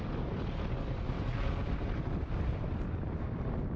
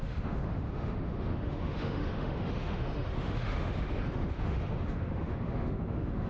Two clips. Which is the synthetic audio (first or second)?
second